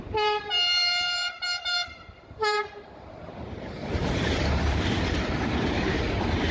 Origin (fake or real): fake